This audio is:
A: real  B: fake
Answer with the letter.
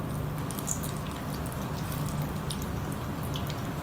A